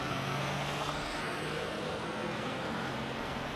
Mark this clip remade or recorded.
remade